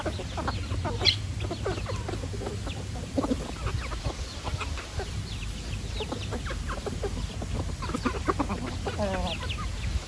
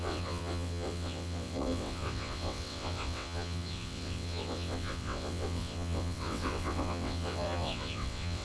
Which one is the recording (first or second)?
first